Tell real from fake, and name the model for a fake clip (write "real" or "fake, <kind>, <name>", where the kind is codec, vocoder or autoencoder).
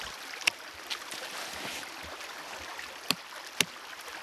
real